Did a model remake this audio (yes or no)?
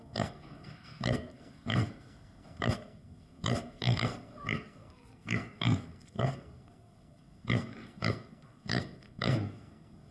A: yes